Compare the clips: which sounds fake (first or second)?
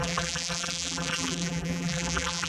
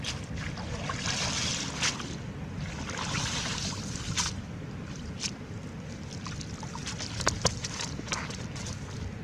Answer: first